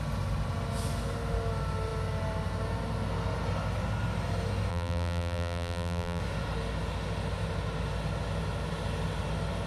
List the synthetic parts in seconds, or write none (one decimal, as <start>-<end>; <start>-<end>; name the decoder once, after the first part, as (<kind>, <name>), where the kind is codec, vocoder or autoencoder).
4.7-6.2 (vocoder, BigVGAN v2)